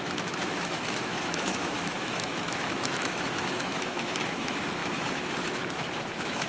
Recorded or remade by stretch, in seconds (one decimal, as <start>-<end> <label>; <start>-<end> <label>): 0.0-6.5 remade